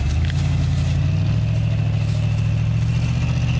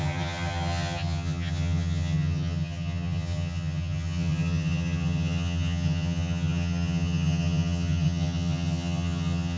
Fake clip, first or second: second